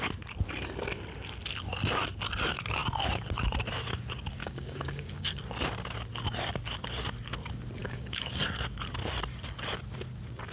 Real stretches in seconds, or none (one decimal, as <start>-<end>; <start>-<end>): 0.0-4.4; 5.4-7.8; 8.4-10.5